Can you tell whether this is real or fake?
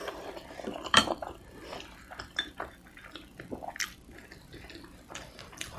fake